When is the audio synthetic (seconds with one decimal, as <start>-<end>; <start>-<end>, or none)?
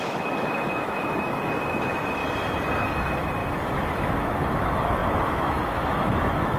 0.0-2.2; 2.9-6.6